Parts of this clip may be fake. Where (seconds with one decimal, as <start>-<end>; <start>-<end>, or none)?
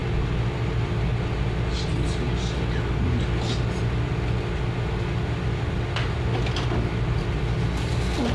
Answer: none